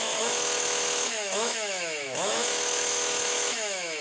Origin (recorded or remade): remade